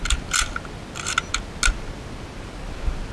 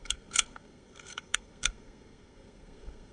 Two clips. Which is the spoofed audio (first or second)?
second